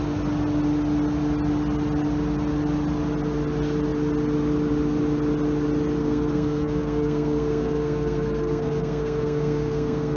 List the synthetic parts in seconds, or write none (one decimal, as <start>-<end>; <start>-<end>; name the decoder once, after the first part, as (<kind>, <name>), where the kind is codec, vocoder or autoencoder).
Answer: 6.0-10.2 (codec, SNAC)